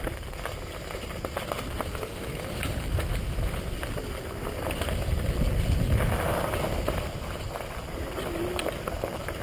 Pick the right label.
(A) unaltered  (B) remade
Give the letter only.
A